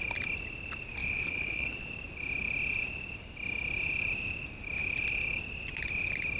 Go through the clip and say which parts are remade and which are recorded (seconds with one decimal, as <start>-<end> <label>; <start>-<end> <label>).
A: 0.0-1.0 recorded; 1.0-1.9 remade; 1.9-6.4 recorded